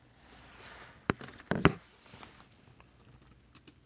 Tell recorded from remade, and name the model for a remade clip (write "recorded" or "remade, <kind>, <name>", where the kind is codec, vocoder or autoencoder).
recorded